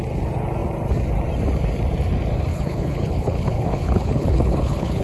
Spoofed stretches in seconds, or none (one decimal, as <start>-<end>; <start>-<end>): 2.5-5.0

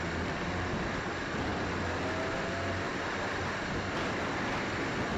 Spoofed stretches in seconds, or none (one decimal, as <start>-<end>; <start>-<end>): 0.0-5.2

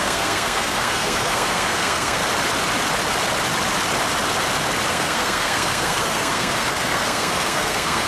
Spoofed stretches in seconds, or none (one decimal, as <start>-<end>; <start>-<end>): 0.0-2.2; 4.9-8.1

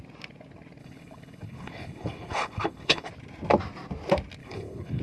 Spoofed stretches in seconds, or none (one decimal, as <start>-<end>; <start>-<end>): 0.8-3.1; 4.4-5.0

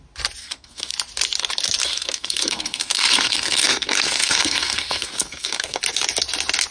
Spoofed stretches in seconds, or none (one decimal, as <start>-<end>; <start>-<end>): 0.4-0.9; 1.8-5.8

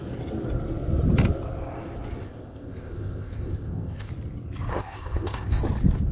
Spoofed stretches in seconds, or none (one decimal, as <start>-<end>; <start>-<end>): 2.2-4.1; 4.7-5.6

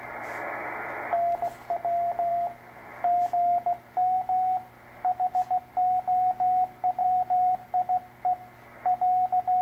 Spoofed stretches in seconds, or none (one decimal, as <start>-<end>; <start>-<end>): 7.0-8.0

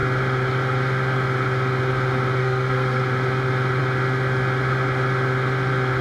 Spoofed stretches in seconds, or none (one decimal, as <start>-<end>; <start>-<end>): 2.4-3.0